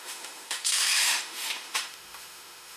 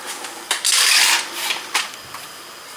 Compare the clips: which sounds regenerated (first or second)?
first